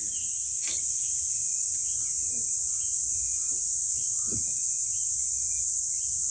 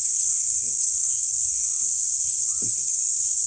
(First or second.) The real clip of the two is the first